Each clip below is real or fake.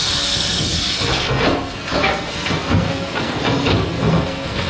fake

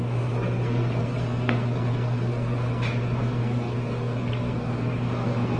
fake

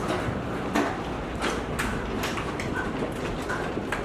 real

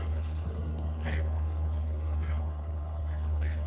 fake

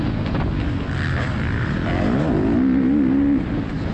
real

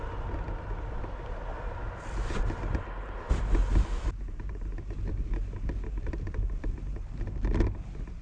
real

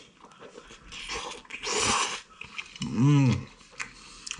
real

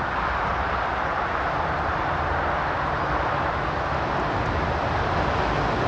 real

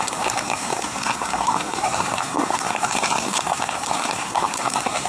fake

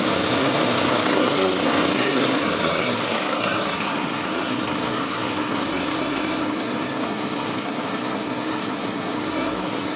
fake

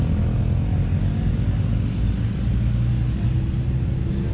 real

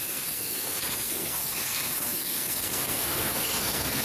fake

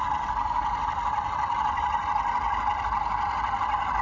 real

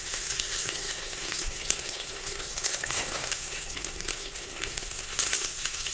fake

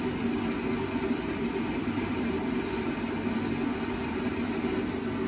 real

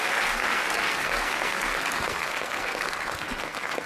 fake